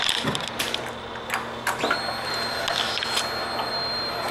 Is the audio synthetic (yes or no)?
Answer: no